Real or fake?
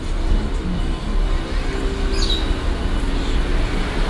real